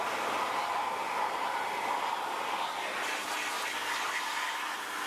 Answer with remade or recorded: recorded